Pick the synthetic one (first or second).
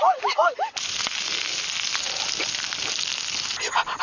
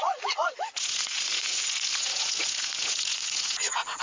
second